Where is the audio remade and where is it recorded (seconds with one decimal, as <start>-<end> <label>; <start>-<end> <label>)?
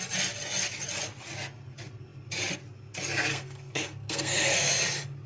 0.0-3.3 recorded; 3.3-4.7 remade; 4.7-5.3 recorded